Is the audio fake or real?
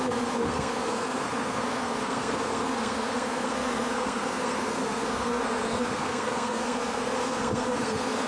fake